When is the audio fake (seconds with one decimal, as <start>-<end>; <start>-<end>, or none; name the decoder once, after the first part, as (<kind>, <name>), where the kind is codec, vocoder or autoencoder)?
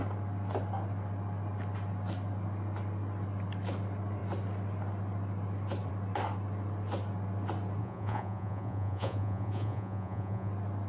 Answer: 7.8-10.5 (vocoder, Vocos)